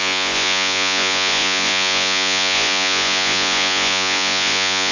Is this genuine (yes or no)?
no